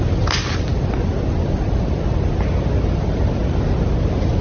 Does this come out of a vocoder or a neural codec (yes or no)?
no